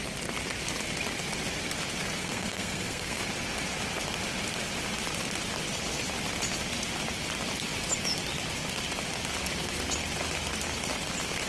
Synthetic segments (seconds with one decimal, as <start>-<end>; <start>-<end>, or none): 2.2-3.2